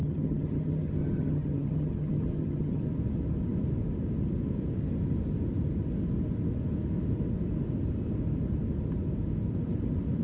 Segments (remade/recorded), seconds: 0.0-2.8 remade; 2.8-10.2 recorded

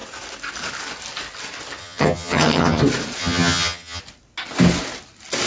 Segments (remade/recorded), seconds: 0.0-1.8 recorded; 1.8-2.8 remade; 2.8-3.2 recorded; 3.2-4.0 remade; 4.0-5.5 recorded